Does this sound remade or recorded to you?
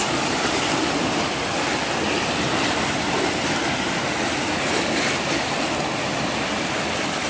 recorded